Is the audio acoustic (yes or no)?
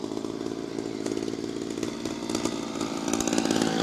yes